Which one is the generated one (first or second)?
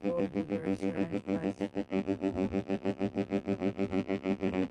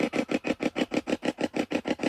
first